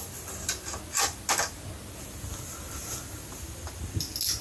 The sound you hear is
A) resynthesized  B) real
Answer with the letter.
B